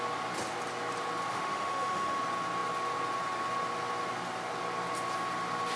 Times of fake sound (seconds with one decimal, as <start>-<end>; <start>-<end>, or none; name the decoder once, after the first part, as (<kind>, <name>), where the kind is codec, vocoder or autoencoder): 1.3-2.2 (autoencoder, DAC-VAE)